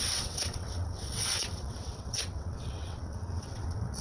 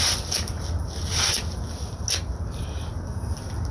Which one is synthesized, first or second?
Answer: first